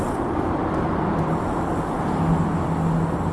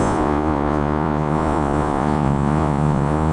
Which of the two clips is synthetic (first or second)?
second